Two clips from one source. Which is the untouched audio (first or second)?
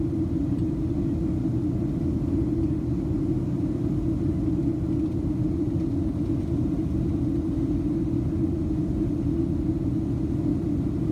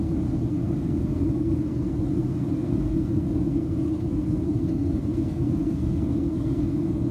first